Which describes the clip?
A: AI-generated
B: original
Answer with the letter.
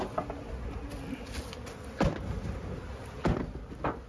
B